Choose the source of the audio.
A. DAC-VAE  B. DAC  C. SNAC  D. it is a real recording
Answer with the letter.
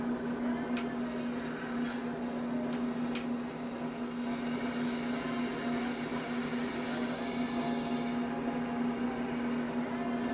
D